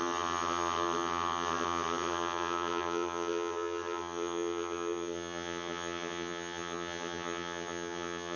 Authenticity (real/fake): fake